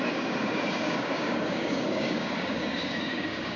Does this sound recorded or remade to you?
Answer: remade